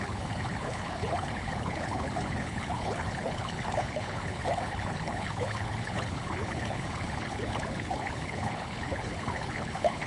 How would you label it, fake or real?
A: fake